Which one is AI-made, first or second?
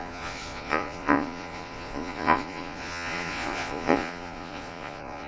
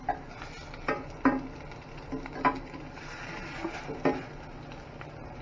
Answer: first